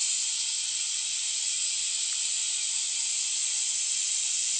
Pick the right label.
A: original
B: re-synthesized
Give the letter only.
A